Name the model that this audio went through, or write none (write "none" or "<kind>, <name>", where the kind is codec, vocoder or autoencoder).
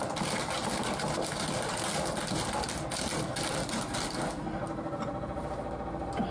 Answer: none